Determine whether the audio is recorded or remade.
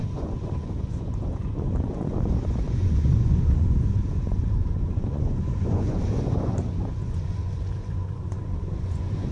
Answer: remade